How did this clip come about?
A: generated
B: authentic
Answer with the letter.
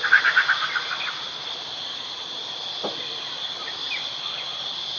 B